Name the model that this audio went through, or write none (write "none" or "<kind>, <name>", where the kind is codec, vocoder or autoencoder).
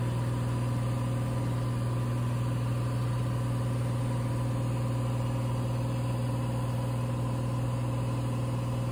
none